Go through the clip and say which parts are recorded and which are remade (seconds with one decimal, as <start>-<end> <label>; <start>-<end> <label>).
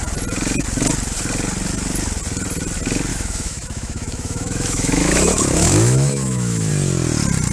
0.0-3.1 recorded; 3.1-6.7 remade; 6.7-7.5 recorded